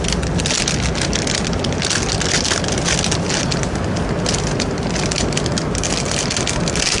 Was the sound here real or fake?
real